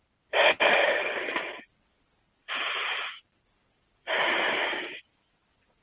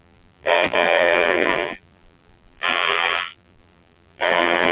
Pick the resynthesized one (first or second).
second